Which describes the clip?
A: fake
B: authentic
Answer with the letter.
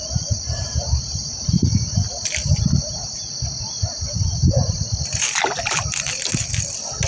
B